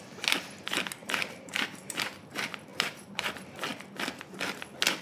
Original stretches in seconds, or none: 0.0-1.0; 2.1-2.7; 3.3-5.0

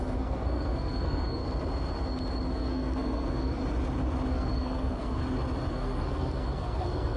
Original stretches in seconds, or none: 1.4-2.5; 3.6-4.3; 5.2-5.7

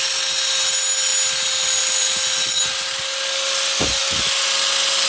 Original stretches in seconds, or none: 0.0-5.1